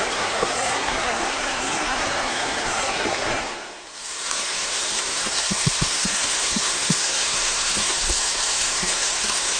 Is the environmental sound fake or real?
fake